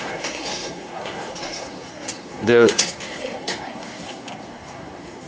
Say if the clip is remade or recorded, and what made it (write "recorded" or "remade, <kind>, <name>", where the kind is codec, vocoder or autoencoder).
remade, codec, SNAC